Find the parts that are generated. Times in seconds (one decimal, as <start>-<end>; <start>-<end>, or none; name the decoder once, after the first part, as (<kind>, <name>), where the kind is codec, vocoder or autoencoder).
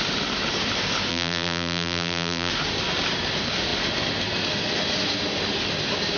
1.1-2.5 (vocoder, BigVGAN v2)